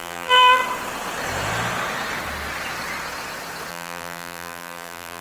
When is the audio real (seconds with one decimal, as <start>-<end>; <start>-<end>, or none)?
0.6-3.7